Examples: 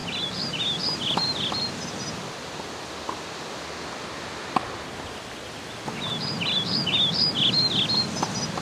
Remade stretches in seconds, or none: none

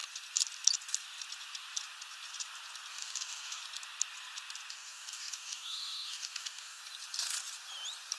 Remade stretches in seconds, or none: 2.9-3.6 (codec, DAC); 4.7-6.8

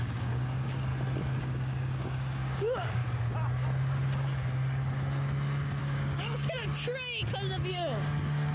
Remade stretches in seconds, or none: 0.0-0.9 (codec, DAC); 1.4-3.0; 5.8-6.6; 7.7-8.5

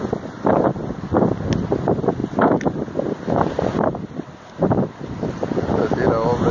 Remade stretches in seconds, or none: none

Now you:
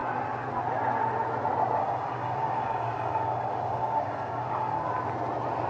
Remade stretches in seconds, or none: 1.8-4.9 (codec, DAC)

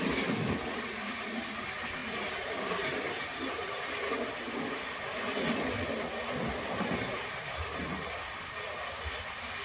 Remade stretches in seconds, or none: none